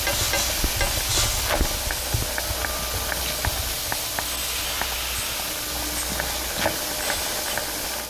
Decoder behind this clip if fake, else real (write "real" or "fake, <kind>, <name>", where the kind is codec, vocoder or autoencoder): real